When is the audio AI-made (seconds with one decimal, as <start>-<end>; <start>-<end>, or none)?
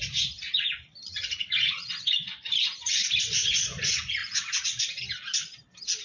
1.0-3.2; 4.2-5.0